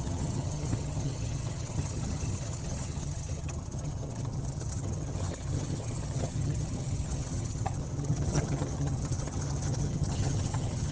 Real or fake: fake